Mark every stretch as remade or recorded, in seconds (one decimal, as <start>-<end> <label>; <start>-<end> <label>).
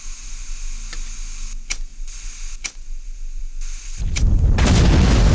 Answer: 0.0-5.3 recorded